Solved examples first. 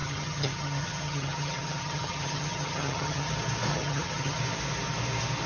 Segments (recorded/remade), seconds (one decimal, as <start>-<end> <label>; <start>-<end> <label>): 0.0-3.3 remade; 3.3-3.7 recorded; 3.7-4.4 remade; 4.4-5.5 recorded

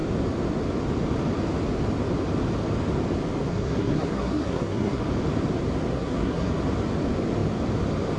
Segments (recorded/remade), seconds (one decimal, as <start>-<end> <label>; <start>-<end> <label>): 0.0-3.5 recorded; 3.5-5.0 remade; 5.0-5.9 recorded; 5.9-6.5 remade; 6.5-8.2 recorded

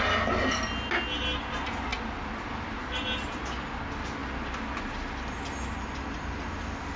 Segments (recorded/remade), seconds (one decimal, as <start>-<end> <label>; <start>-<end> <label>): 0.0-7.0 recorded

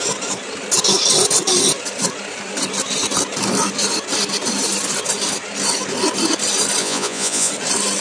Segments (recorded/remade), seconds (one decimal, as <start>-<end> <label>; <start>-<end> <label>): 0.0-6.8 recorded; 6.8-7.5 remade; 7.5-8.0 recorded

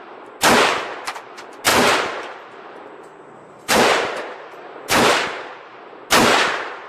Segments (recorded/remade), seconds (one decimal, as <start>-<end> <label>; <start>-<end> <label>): 0.0-1.7 recorded; 1.7-5.8 remade; 5.8-6.2 recorded; 6.2-6.9 remade

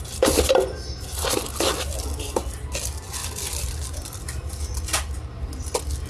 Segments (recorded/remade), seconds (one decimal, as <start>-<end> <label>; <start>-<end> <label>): 0.0-6.1 recorded